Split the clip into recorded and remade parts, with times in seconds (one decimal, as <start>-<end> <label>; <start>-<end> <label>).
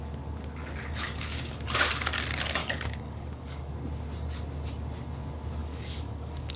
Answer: 0.0-0.6 recorded; 0.6-1.9 remade; 1.9-2.6 recorded; 2.6-3.7 remade; 3.7-5.6 recorded; 5.6-6.6 remade